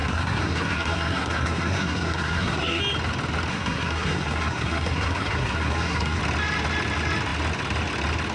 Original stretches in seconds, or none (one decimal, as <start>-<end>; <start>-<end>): 2.8-3.5; 6.2-8.3